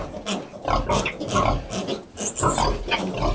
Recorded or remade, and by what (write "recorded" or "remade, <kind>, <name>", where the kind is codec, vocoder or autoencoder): recorded